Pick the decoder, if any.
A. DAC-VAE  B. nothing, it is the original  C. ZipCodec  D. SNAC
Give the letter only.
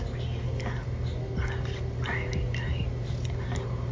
B